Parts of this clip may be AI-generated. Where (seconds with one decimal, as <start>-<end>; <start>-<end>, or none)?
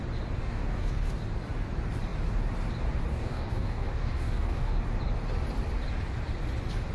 0.4-1.1; 3.1-4.8